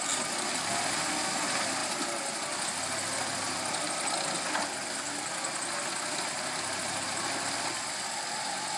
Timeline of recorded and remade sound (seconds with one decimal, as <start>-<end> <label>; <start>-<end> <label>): 0.0-8.8 recorded